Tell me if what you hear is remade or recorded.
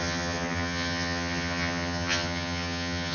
remade